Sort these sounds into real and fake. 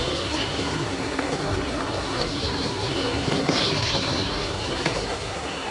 fake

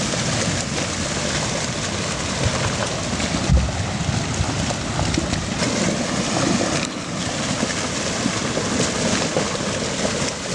real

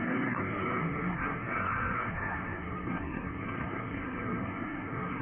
fake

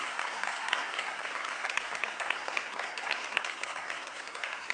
fake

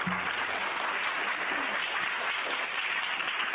real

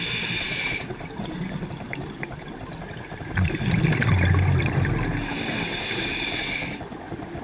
real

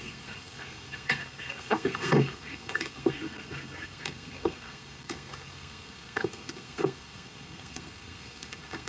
fake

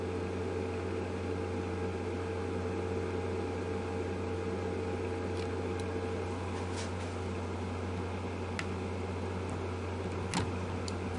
real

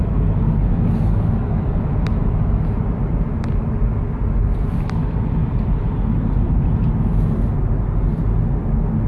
real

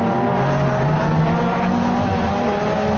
real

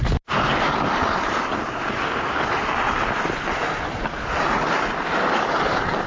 real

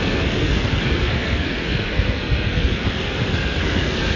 fake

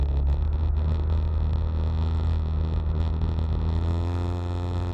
real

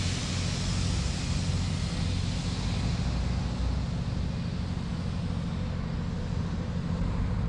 real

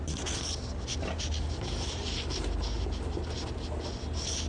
real